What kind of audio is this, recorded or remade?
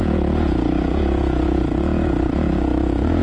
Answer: remade